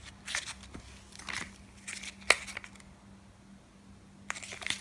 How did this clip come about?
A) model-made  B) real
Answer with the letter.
B